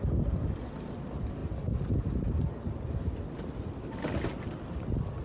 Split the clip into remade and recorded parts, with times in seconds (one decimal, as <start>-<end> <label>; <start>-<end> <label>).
0.0-5.2 recorded